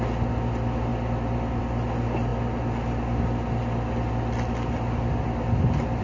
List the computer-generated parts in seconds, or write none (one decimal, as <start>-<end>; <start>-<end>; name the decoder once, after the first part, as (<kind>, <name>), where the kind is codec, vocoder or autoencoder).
0.0-0.9 (vocoder, BigVGAN v2); 1.6-2.3; 4.1-6.0